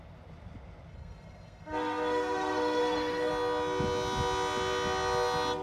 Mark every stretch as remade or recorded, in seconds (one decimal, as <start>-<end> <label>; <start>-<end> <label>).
0.0-0.9 recorded; 0.9-3.3 remade; 3.3-5.6 recorded